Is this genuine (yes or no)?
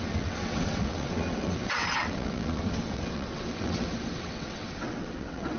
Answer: no